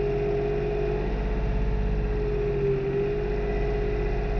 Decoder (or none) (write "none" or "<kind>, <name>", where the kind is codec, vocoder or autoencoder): none